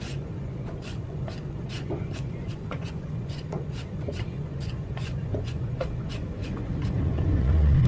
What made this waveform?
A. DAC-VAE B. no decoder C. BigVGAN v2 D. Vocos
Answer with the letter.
D